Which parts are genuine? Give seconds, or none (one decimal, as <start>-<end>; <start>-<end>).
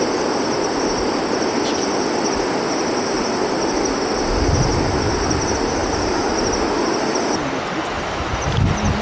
0.0-4.7; 5.3-5.8; 6.5-9.0